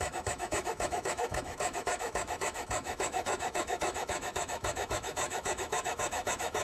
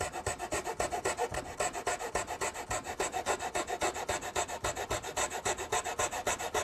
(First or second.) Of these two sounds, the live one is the second